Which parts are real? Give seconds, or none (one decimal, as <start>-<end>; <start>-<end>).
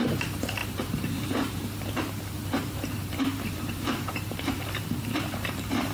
none